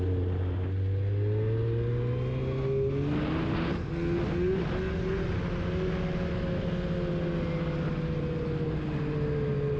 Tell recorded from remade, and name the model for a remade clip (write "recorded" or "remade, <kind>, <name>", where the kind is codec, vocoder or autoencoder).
recorded